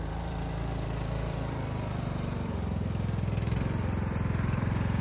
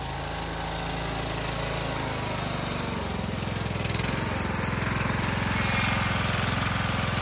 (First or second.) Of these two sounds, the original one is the second